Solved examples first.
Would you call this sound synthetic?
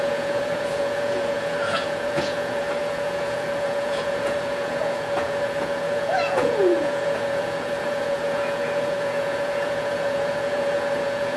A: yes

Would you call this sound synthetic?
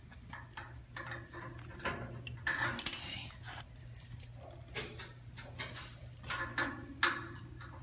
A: no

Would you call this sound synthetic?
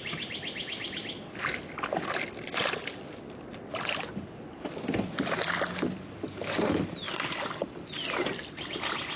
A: no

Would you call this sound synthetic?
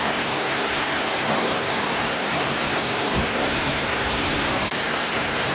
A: yes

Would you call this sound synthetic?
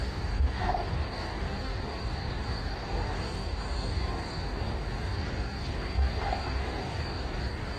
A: yes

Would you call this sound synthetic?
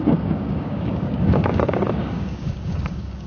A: yes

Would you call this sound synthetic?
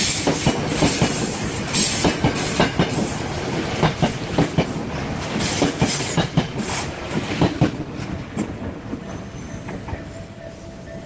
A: no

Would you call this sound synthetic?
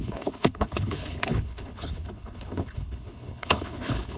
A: yes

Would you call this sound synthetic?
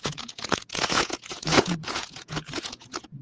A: yes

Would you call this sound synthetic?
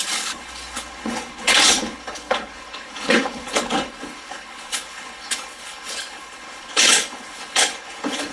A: yes